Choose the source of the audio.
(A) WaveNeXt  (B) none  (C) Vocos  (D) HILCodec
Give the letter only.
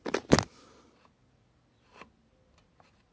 B